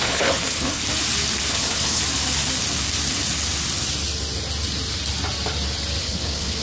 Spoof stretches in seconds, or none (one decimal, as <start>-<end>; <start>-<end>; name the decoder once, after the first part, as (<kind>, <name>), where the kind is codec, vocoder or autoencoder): 0.0-0.8 (codec, HILCodec); 1.5-2.0; 6.0-6.6